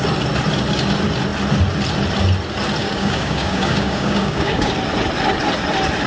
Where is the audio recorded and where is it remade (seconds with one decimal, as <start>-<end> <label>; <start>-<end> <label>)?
0.0-2.8 recorded; 2.8-4.7 remade; 4.7-6.1 recorded